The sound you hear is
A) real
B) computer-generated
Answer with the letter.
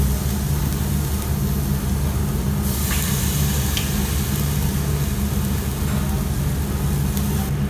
A